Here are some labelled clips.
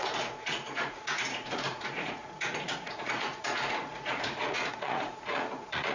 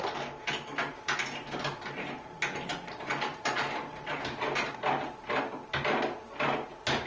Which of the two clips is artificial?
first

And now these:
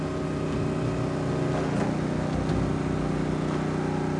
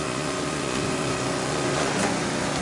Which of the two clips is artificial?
second